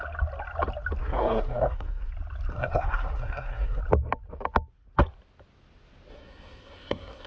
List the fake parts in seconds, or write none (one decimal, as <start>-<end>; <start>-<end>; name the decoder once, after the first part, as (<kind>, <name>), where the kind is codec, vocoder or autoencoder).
1.0-2.1 (codec, SNAC); 2.5-3.8; 6.1-7.3